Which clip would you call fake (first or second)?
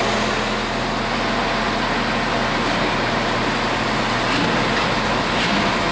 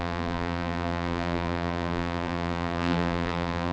second